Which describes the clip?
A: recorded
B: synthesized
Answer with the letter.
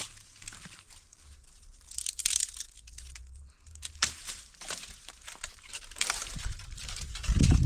B